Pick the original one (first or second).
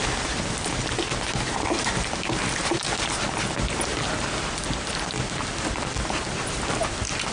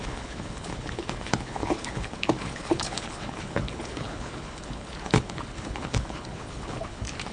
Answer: first